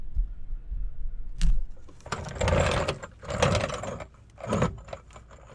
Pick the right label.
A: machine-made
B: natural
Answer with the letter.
B